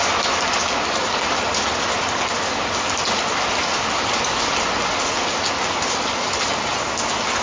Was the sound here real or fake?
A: real